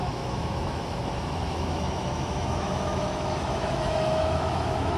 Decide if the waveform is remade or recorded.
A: remade